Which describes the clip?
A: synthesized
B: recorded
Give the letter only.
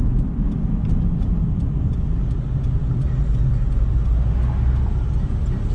B